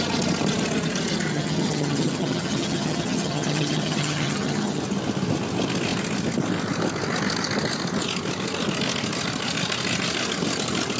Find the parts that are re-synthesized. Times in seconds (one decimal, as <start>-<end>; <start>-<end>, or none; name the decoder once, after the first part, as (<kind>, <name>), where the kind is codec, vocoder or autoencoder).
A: 1.3-4.8 (vocoder, HiFi-GAN)